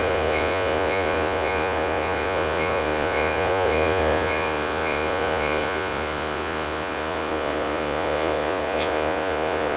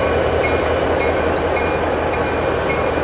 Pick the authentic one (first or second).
second